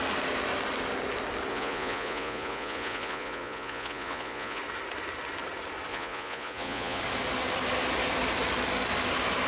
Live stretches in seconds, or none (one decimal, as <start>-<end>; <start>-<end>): 0.0-1.5; 4.6-5.9; 7.0-9.5